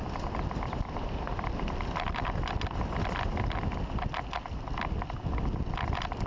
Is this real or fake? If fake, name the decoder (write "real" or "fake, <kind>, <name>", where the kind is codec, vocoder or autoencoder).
real